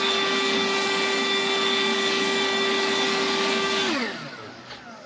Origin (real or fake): fake